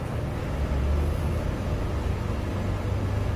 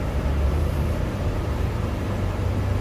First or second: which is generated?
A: second